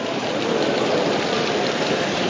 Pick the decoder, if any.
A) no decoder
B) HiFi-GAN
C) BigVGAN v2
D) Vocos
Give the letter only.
C